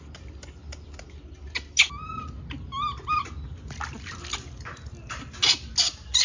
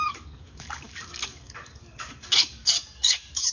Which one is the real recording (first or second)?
first